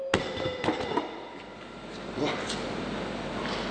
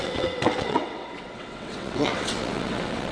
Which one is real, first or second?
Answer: first